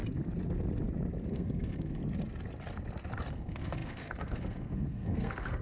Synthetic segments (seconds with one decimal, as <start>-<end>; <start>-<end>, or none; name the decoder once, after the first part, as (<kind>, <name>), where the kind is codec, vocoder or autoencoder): 1.3-2.0 (codec, SNAC); 3.3-5.6